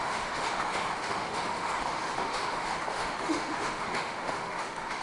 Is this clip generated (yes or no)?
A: yes